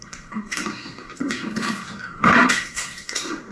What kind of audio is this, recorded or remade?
remade